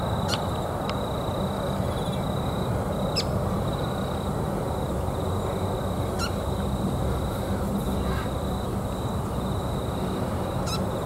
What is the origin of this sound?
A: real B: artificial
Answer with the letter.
A